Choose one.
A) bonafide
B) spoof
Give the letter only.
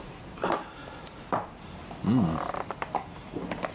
B